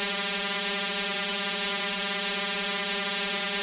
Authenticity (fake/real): fake